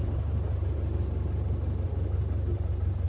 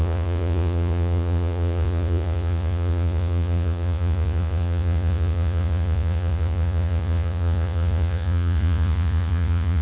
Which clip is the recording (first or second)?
first